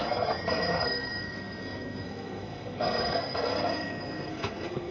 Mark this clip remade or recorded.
remade